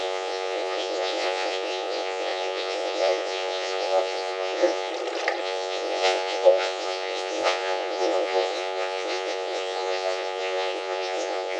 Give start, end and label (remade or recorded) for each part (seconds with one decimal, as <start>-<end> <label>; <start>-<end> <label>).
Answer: 0.0-4.9 remade; 4.9-5.4 recorded; 5.4-11.6 remade